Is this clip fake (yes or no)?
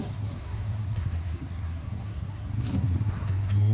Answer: yes